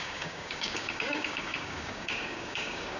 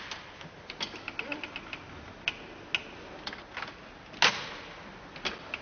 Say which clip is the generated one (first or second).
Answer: first